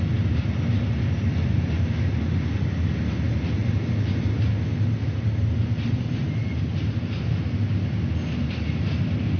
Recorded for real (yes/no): yes